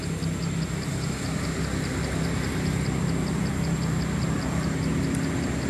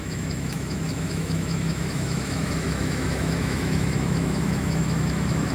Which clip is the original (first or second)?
first